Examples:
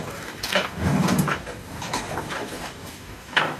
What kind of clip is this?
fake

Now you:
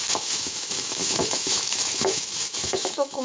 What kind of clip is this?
fake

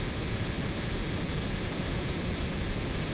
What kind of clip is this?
real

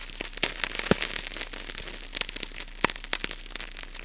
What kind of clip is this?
real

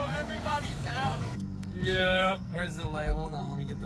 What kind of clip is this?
fake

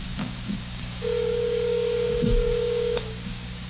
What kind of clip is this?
fake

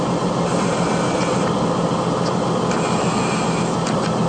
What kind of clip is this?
real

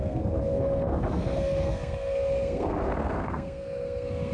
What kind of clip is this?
fake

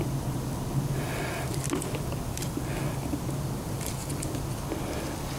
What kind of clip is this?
real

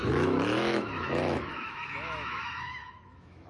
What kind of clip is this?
fake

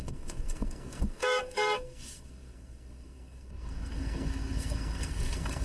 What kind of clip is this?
fake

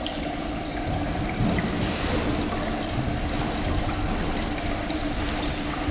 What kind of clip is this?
real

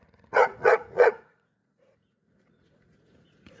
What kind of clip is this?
fake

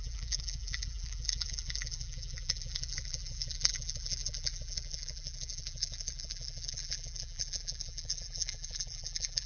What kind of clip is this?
fake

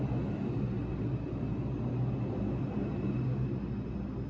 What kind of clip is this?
real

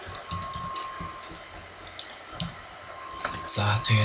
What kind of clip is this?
real